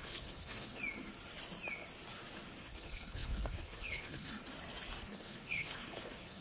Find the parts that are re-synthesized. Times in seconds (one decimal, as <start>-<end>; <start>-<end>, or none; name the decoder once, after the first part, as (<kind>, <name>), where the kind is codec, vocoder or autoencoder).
0.0-0.8 (codec, HILCodec); 2.6-4.3; 5.0-6.4